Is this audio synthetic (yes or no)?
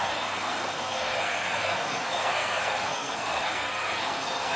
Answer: yes